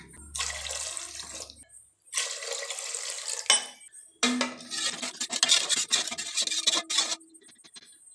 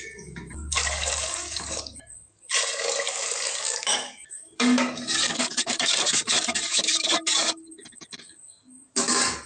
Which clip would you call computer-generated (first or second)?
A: second